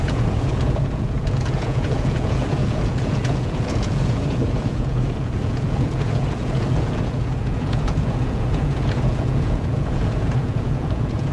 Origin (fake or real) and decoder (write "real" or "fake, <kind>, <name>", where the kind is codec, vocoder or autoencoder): fake, vocoder, Vocos